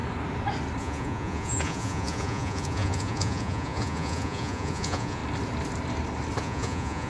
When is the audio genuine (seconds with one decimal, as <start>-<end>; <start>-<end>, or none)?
0.0-0.8; 5.2-6.4